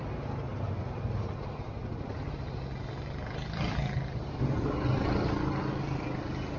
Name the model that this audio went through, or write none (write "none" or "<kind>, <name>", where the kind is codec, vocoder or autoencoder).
none